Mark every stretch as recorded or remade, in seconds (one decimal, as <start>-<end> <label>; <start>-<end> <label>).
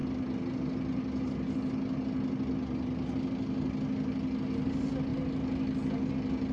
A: 0.0-6.5 recorded